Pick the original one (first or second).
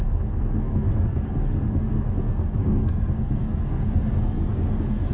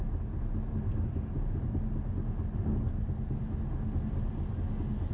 second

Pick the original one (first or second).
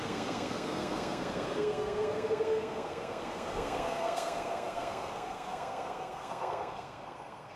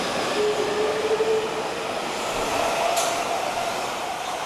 second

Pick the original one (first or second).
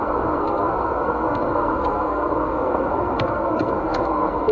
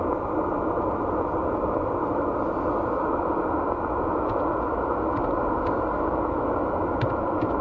second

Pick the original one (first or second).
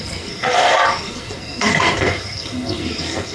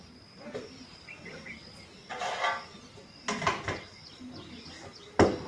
second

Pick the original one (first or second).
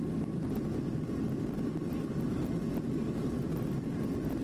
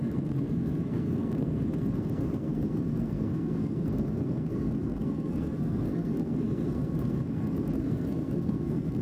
first